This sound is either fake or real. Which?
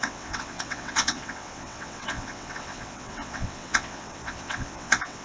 fake